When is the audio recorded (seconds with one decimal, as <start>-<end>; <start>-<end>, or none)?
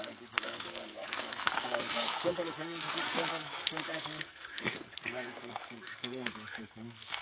none